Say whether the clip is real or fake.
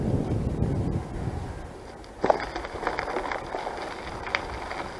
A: real